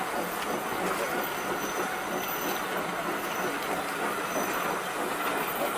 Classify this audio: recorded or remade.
recorded